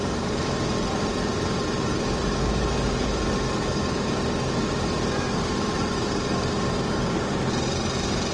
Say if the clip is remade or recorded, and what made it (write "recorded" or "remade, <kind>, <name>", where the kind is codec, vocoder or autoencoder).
remade, vocoder, BigVGAN v2